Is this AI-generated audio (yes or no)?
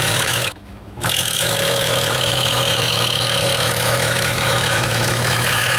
yes